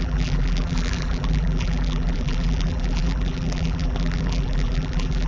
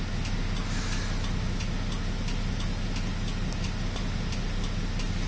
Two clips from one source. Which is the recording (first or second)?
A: second